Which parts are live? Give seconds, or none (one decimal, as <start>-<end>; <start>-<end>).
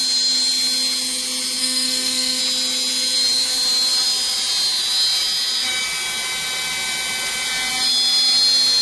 0.0-1.6; 2.4-8.8